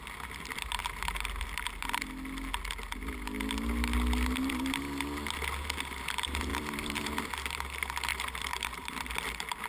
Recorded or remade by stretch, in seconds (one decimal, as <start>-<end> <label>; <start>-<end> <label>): 0.0-6.5 recorded; 6.5-7.3 remade; 7.3-8.1 recorded; 8.1-9.1 remade; 9.1-9.7 recorded